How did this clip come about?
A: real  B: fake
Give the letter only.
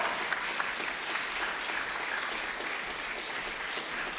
A